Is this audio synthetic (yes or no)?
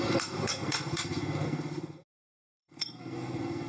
yes